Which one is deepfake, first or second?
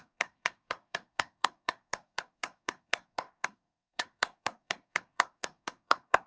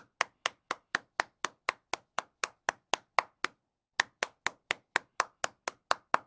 first